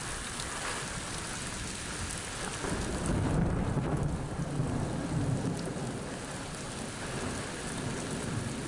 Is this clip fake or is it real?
real